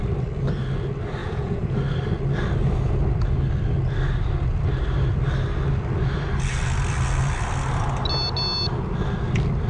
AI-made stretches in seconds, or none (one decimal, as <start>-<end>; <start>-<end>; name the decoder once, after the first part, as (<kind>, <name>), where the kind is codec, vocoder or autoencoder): 1.2-1.8 (vocoder, Vocos)